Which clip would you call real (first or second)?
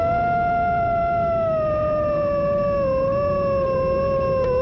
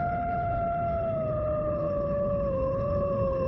first